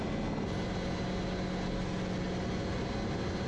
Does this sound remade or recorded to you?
recorded